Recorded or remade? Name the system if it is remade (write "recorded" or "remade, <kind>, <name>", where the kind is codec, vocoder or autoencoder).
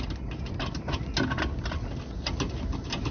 recorded